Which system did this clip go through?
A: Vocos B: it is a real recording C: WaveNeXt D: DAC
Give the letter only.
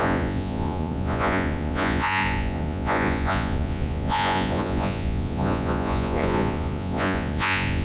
A